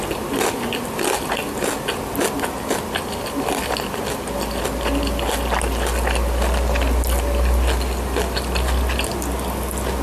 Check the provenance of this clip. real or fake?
real